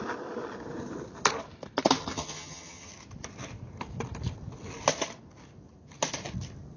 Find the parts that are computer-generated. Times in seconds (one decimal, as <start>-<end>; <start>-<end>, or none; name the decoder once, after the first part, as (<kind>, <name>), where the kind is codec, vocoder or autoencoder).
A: 2.0-2.9 (vocoder, HiFi-GAN)